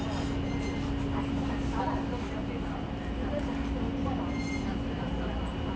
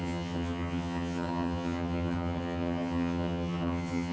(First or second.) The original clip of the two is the first